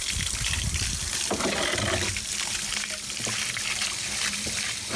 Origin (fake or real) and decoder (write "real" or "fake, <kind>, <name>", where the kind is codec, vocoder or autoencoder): real